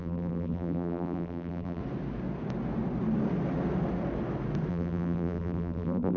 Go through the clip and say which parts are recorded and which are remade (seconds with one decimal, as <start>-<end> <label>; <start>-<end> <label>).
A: 0.0-1.8 remade; 1.8-4.7 recorded; 4.7-6.2 remade